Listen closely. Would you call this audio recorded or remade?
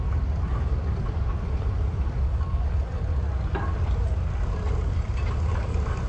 recorded